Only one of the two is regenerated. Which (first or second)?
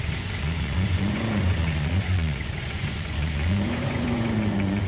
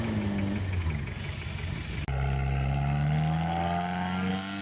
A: first